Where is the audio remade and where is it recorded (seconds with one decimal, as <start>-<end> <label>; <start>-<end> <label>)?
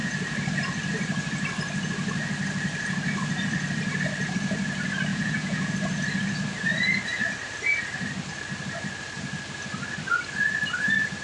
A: 0.0-5.1 recorded; 5.1-5.7 remade; 5.7-11.2 recorded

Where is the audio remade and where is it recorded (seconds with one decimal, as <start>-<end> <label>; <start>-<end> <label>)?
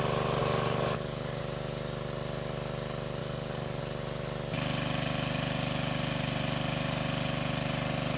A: 0.0-0.4 recorded; 0.4-1.4 remade; 1.4-3.2 recorded; 3.2-3.8 remade; 3.8-8.2 recorded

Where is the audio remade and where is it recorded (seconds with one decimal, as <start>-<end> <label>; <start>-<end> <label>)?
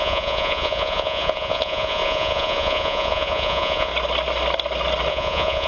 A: 0.0-3.9 remade; 3.9-5.1 recorded; 5.1-5.7 remade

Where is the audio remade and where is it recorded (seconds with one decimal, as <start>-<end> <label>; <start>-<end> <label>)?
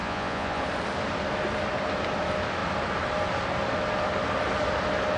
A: 0.0-0.6 remade; 0.6-5.2 recorded